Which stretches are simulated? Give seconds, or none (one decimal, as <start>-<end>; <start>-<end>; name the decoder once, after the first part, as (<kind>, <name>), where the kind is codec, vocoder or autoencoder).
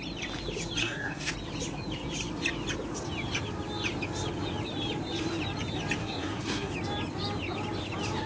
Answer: 0.8-1.3 (codec, SNAC); 6.0-6.7